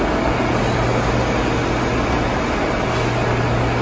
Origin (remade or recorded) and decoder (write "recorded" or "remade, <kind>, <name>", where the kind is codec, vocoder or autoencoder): recorded